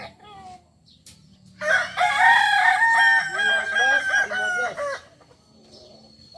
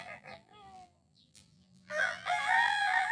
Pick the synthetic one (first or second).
second